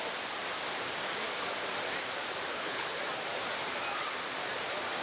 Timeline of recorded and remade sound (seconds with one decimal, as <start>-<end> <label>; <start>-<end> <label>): 0.0-2.5 recorded; 2.5-3.0 remade; 3.0-5.0 recorded